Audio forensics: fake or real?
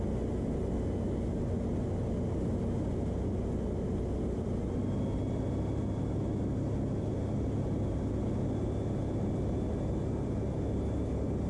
real